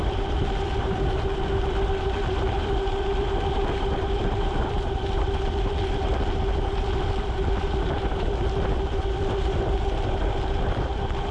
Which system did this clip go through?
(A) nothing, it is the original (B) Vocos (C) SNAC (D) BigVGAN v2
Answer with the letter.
D